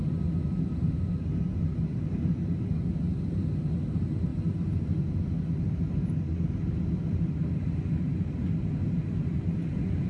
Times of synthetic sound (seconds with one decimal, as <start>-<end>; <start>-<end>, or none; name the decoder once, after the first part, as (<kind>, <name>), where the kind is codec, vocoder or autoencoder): none